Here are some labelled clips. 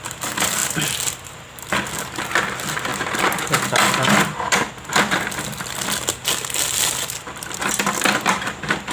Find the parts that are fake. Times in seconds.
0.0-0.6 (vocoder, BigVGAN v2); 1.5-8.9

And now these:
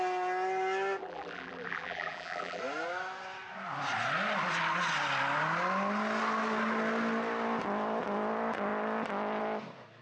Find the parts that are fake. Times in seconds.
1.0-2.6 (vocoder, BigVGAN v2)

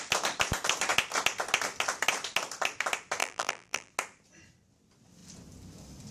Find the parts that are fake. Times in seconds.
3.2-3.9 (vocoder, BigVGAN v2)

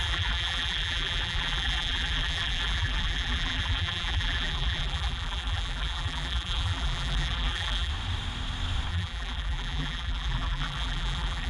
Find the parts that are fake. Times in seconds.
0.0-7.9 (vocoder, BigVGAN v2); 8.9-11.5

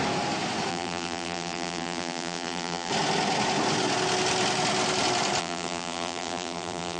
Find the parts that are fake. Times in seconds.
0.7-2.9 (vocoder, BigVGAN v2); 5.4-7.0

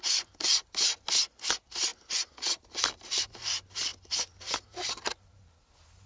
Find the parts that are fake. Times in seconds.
none